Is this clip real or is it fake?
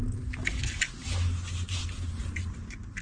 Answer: real